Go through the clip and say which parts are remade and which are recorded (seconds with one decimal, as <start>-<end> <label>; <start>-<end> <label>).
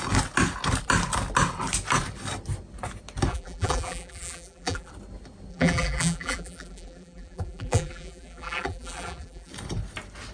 0.0-3.3 recorded; 3.3-4.9 remade; 4.9-5.5 recorded; 5.5-9.5 remade; 9.5-10.3 recorded